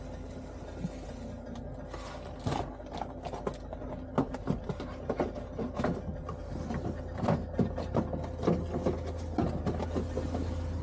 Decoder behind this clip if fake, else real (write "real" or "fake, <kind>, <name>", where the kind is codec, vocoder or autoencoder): real